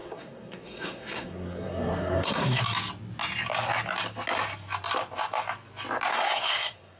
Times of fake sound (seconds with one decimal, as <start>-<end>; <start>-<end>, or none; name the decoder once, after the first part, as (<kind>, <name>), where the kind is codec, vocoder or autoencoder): 0.0-2.6 (codec, SNAC); 6.1-7.0